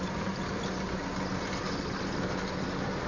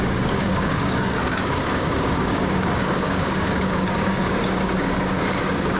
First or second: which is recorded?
first